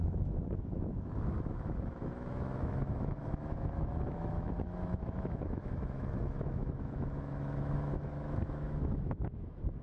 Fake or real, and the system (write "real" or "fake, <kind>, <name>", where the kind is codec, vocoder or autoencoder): fake, autoencoder, DAC-VAE